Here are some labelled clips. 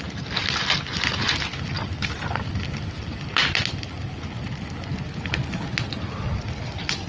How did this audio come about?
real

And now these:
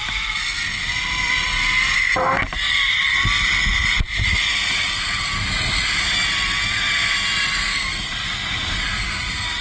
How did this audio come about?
real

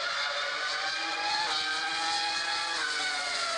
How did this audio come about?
fake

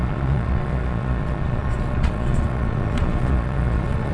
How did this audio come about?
fake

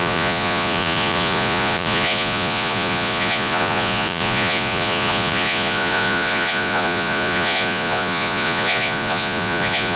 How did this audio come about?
fake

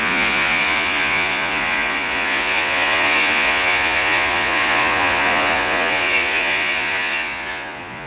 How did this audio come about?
fake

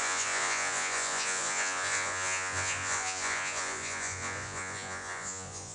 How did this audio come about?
fake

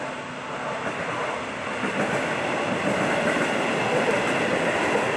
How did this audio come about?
real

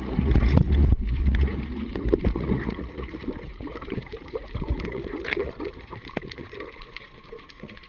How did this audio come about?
fake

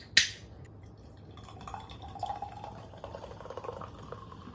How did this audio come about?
real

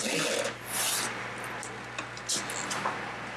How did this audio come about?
real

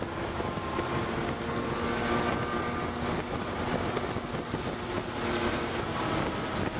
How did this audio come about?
real